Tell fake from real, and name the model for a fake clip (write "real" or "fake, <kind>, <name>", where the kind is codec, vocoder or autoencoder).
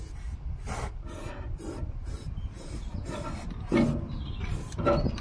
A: real